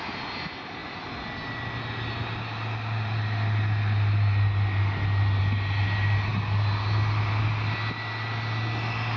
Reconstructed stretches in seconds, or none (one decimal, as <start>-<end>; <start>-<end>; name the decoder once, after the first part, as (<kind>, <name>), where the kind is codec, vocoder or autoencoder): none